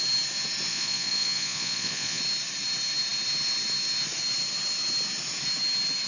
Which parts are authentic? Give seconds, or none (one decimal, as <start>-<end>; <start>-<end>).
0.0-0.7; 2.2-6.1